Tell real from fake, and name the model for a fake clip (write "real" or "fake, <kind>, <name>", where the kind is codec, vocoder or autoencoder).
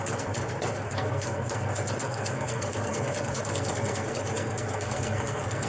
fake, codec, SNAC